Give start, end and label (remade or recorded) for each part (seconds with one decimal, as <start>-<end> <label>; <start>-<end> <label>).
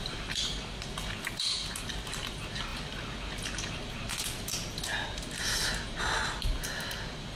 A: 0.0-7.4 recorded